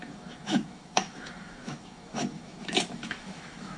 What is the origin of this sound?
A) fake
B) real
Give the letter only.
A